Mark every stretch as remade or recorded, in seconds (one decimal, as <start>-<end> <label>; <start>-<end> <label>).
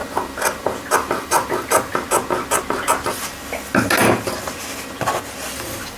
0.0-1.1 recorded; 1.1-1.9 remade; 1.9-5.5 recorded; 5.5-6.0 remade